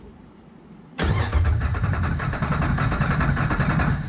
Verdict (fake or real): fake